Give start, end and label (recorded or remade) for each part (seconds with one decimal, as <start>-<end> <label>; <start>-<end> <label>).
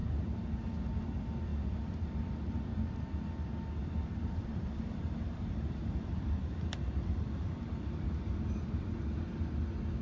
0.0-3.8 recorded; 3.8-9.0 remade; 9.0-10.0 recorded